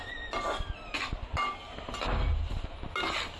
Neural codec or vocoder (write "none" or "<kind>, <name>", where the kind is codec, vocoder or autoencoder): none